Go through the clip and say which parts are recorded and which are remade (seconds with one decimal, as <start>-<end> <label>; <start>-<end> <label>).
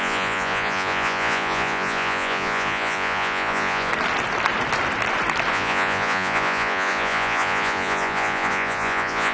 0.0-3.9 remade; 3.9-5.5 recorded; 5.5-9.3 remade